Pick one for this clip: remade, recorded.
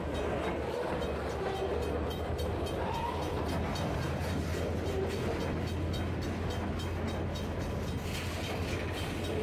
recorded